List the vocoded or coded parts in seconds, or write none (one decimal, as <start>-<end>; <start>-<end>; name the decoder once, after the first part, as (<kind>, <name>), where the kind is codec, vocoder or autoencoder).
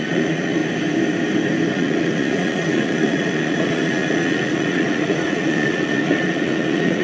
0.0-0.6 (vocoder, Vocos); 1.7-7.0